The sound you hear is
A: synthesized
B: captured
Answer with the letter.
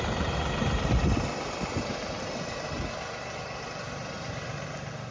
B